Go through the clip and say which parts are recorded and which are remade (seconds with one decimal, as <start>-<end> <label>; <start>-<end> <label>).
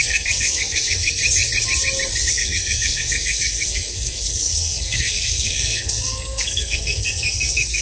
0.0-1.2 remade; 1.2-2.3 recorded; 2.3-7.8 remade